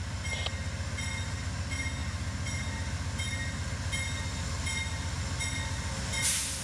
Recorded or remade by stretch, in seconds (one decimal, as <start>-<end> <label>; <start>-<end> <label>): 0.0-6.6 recorded